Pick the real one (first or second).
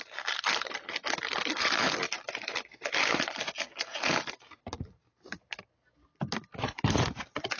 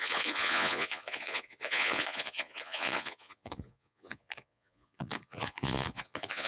first